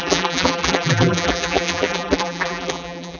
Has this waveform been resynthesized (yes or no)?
yes